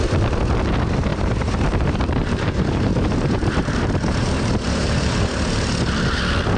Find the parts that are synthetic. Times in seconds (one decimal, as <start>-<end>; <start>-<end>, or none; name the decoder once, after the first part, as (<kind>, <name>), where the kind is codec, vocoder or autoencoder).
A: 1.1-5.1 (vocoder, BigVGAN v2)